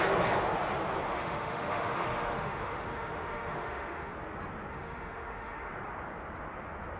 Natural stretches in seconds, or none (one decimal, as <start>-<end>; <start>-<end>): 0.0-1.1; 4.1-4.7; 5.7-7.0